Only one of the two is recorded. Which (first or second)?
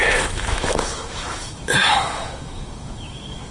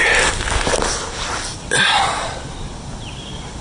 second